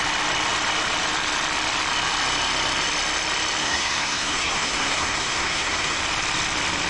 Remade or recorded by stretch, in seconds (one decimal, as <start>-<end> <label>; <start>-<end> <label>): 0.0-3.6 recorded; 3.6-6.0 remade; 6.0-6.9 recorded

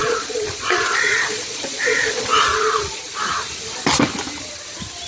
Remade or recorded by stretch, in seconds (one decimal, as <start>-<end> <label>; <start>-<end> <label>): 0.0-3.1 remade; 3.1-5.1 recorded

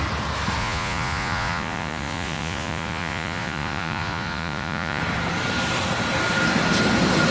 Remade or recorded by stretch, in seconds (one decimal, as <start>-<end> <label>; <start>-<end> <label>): 0.0-0.6 recorded; 0.6-5.0 remade; 5.0-7.3 recorded

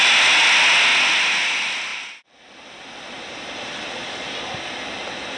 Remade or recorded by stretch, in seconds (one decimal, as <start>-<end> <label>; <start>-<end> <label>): 0.0-1.9 recorded; 1.9-5.4 remade

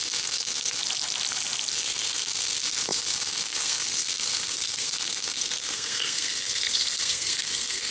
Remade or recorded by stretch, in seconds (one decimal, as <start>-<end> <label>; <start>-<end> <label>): 0.0-0.8 remade; 0.8-1.7 recorded; 1.7-7.9 remade

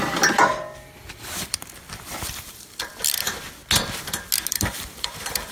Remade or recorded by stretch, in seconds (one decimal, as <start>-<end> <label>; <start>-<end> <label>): 0.0-0.5 remade; 0.5-1.0 recorded; 1.0-3.6 remade; 3.6-4.5 recorded; 4.5-5.5 remade